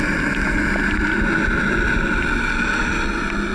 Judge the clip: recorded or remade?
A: recorded